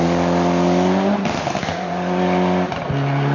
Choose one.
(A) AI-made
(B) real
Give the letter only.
B